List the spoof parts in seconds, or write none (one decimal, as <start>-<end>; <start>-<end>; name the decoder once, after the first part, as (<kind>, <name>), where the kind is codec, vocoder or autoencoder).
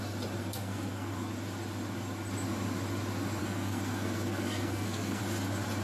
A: 0.4-1.3 (codec, SNAC); 3.4-5.2